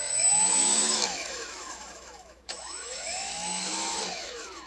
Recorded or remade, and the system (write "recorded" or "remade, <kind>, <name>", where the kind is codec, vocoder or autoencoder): remade, autoencoder, DAC-VAE